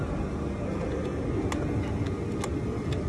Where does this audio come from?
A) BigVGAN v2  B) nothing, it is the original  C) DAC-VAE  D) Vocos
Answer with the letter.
B